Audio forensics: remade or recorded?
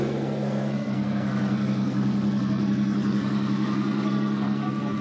remade